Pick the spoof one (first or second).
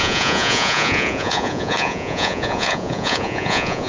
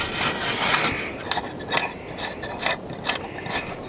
first